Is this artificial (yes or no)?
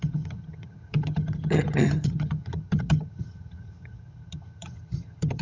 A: yes